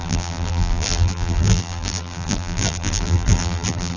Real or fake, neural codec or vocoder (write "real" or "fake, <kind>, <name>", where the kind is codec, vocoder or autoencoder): fake, vocoder, BigVGAN v2